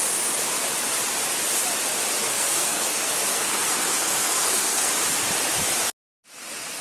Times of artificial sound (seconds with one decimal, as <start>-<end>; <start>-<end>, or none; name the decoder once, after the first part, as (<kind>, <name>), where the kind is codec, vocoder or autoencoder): 2.2-4.9 (codec, SNAC)